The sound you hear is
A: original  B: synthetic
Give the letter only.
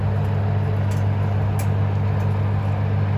A